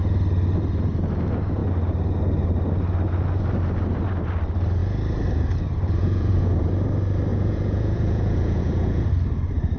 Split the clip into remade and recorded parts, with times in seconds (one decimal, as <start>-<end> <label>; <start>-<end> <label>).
0.0-6.0 recorded; 6.0-6.7 remade; 6.7-7.3 recorded; 7.3-9.1 remade; 9.1-9.8 recorded